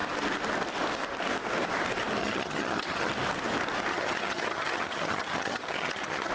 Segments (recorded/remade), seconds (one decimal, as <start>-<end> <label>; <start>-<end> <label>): 0.0-2.2 recorded; 2.2-3.1 remade; 3.1-3.9 recorded; 3.9-6.3 remade